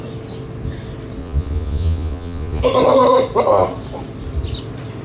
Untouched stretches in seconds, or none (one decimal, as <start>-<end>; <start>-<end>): 0.0-1.2; 2.6-5.0